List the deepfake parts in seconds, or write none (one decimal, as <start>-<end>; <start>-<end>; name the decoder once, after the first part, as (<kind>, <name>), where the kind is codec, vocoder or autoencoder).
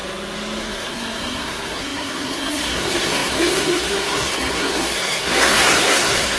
0.6-6.4 (codec, SNAC)